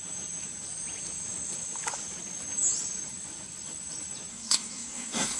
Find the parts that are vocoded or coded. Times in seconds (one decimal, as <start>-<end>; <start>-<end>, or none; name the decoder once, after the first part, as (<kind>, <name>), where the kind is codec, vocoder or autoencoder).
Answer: 4.3-5.4 (codec, SNAC)